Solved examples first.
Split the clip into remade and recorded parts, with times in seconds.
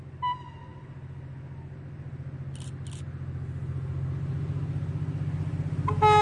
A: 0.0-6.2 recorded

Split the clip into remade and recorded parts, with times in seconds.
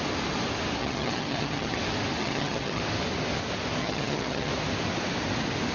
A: 0.0-0.8 recorded; 0.8-1.8 remade; 1.8-2.2 recorded; 2.2-2.8 remade; 2.8-3.8 recorded; 3.8-4.5 remade; 4.5-5.7 recorded